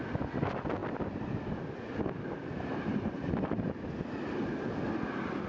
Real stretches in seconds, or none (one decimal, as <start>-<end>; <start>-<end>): 0.0-5.5